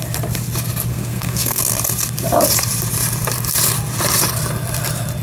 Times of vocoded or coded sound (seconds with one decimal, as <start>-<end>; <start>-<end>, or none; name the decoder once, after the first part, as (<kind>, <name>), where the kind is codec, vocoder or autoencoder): 0.9-1.6 (codec, SNAC)